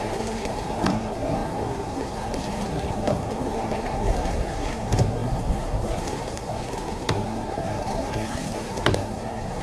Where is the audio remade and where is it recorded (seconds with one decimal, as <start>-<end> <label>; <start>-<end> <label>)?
0.0-9.6 remade